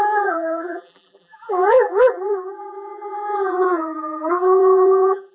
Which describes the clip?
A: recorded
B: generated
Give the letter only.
B